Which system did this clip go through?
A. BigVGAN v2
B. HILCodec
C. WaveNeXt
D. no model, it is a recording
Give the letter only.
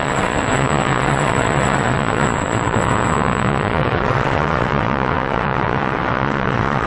C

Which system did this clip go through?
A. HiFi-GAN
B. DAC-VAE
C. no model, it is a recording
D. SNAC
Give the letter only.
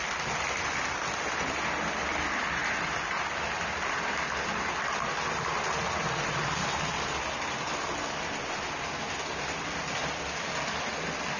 C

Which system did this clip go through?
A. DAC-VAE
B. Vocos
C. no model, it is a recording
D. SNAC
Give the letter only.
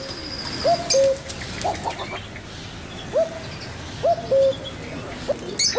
C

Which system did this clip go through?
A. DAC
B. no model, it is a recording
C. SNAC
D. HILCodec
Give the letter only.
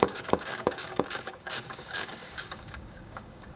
A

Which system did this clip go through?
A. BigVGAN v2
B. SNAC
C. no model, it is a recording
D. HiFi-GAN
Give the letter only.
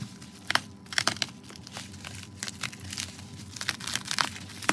A